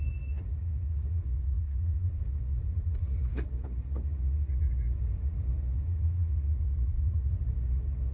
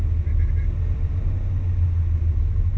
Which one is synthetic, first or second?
first